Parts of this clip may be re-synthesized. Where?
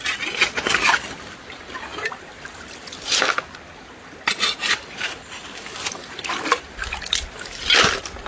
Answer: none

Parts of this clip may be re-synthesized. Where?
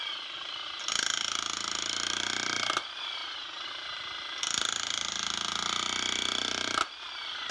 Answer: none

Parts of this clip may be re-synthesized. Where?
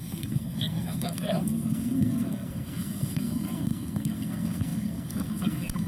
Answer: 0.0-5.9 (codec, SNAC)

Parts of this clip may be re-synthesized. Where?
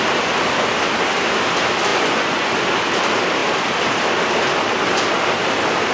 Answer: 1.9-2.5 (vocoder, Vocos)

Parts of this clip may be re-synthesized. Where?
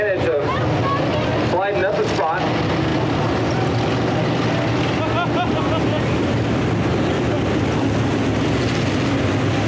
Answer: none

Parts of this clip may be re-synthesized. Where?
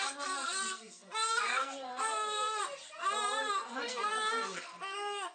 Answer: 0.0-2.6 (codec, SNAC); 3.4-5.3